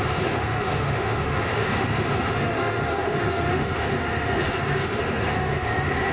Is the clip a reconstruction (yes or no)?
yes